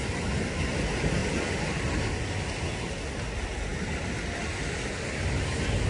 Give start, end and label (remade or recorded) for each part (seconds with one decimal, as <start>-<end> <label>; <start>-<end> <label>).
0.0-5.9 recorded